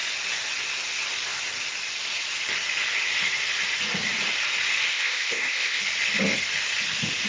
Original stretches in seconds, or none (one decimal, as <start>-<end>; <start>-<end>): 0.0-4.9; 5.8-7.3